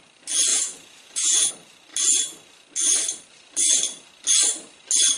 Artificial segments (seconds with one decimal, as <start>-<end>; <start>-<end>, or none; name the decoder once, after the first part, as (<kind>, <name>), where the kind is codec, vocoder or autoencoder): 0.5-1.5 (vocoder, Vocos)